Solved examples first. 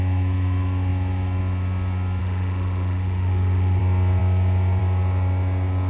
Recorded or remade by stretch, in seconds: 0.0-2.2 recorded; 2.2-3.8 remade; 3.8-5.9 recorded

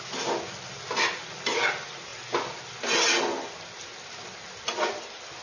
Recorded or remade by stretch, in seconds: 0.0-5.4 recorded

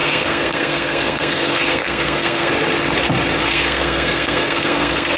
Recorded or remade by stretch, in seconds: 0.0-2.5 remade; 2.5-3.4 recorded; 3.4-5.2 remade

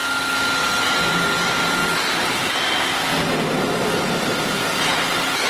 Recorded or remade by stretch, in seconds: 0.0-0.6 recorded; 0.6-1.8 remade; 1.8-3.6 recorded; 3.6-5.5 remade

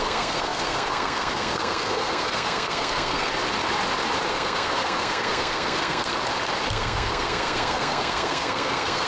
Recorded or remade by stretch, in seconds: 0.0-3.3 remade; 3.3-4.3 recorded; 4.3-6.1 remade; 6.1-6.7 recorded; 6.7-9.1 remade

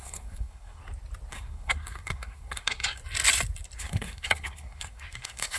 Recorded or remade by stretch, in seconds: 0.0-0.8 remade; 0.8-1.3 recorded; 1.3-3.0 remade; 3.0-3.8 recorded; 3.8-5.6 remade

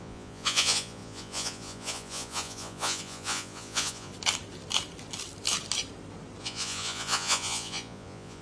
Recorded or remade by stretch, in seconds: 0.0-4.1 remade; 4.1-6.4 recorded; 6.4-8.4 remade